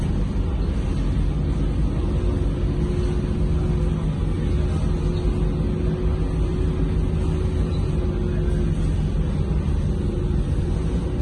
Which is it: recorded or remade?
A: recorded